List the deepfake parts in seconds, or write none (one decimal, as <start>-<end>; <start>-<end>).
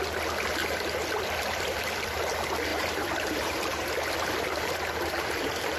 2.7-5.8